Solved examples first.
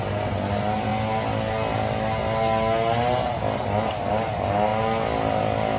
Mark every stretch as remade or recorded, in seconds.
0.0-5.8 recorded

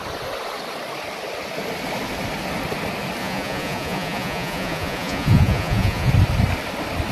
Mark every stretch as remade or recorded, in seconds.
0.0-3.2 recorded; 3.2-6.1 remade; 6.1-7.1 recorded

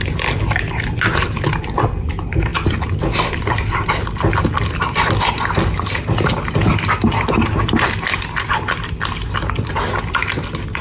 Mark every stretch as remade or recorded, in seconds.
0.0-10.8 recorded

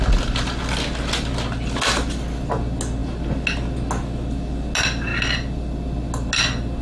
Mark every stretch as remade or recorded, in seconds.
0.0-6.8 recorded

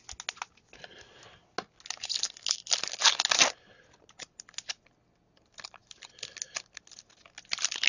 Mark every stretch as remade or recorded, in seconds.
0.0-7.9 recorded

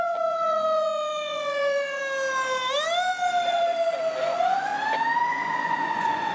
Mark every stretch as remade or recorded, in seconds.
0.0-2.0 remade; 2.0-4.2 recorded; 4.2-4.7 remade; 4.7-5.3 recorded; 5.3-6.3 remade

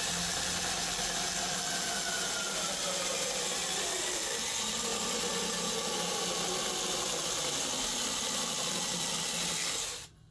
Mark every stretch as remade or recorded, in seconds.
0.0-10.3 recorded

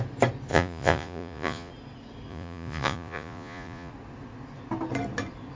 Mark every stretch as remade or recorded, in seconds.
0.0-0.5 recorded; 0.5-1.7 remade; 1.7-2.3 recorded; 2.3-3.9 remade; 3.9-5.6 recorded